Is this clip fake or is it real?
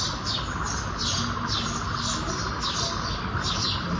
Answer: real